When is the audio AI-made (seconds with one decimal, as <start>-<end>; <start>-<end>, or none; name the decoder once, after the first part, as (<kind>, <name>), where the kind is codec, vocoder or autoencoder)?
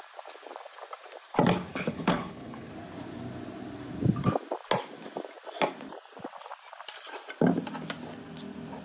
1.7-2.7 (codec, HILCodec)